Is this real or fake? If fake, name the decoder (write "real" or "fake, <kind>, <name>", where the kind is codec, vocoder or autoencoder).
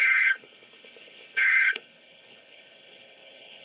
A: fake, codec, HILCodec